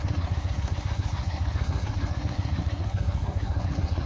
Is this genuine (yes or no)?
no